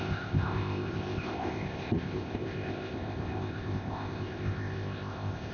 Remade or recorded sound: remade